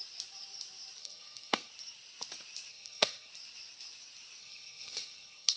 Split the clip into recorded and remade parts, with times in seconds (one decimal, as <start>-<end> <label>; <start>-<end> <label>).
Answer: 0.0-1.0 recorded; 1.0-1.7 remade; 1.7-2.7 recorded; 2.7-3.3 remade; 3.3-4.4 recorded; 4.4-5.6 remade